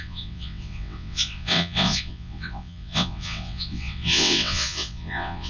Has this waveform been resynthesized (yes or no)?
yes